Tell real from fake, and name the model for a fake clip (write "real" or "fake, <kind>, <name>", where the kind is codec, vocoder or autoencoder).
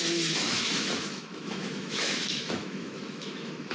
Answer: fake, autoencoder, DAC-VAE